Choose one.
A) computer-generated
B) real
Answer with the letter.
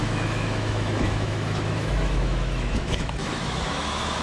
A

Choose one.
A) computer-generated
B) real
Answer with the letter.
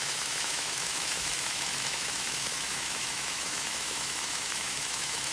A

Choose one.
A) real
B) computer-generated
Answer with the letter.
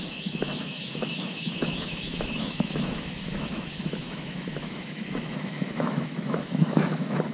B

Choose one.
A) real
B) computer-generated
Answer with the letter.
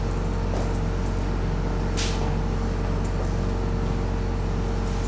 A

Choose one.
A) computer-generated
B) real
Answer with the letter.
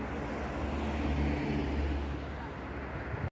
B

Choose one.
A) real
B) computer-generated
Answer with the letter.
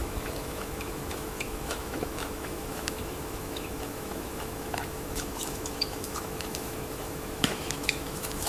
B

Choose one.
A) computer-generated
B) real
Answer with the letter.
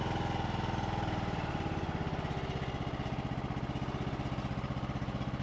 B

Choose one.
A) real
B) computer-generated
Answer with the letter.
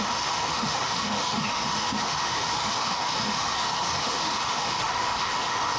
B